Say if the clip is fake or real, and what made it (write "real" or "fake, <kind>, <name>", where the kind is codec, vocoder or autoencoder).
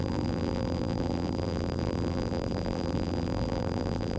fake, vocoder, BigVGAN v2